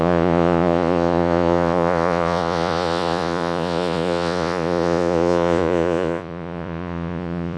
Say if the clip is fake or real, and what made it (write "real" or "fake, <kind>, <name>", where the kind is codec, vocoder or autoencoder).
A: fake, vocoder, Vocos